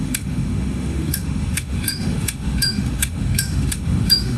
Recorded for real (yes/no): no